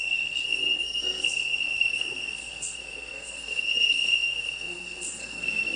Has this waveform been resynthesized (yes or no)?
yes